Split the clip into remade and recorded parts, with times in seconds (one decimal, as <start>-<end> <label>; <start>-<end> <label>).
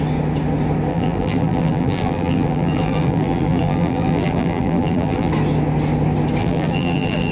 0.0-0.9 recorded; 0.9-5.3 remade; 5.3-6.4 recorded; 6.4-7.3 remade